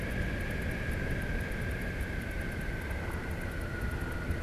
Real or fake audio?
real